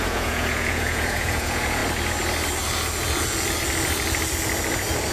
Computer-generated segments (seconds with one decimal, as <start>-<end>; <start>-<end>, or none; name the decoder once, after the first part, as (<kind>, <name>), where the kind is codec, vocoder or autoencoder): 0.0-1.8 (vocoder, Vocos)